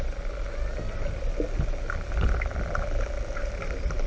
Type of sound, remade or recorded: recorded